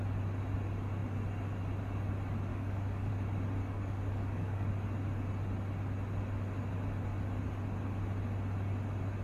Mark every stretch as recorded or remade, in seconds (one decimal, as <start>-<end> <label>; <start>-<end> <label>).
0.0-2.5 recorded; 2.5-3.1 remade; 3.1-3.6 recorded; 3.6-4.7 remade; 4.7-9.2 recorded